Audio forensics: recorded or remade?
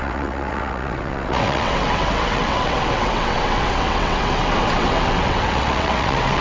remade